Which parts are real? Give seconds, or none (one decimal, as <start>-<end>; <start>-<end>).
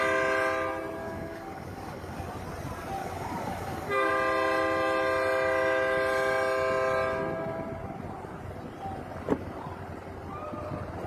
0.0-1.0; 2.3-3.0; 4.1-11.1